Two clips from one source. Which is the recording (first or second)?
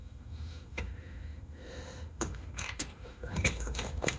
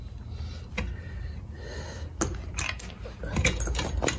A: second